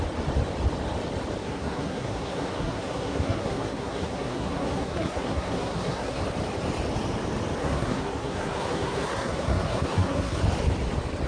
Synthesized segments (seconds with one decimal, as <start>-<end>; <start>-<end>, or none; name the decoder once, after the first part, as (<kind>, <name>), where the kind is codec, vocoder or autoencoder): 1.4-6.2 (codec, SNAC); 7.6-10.4